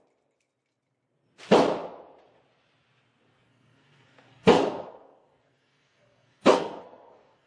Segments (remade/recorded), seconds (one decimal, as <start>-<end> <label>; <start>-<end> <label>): 0.0-3.3 recorded; 3.3-7.5 remade